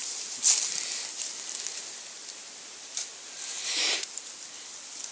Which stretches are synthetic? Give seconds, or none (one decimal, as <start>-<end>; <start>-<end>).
none